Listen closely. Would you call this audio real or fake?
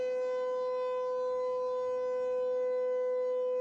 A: real